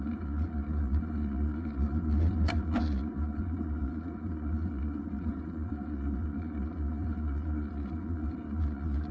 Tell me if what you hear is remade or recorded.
remade